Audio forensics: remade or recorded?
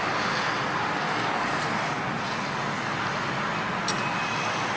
recorded